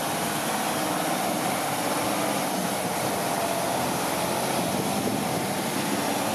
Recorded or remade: recorded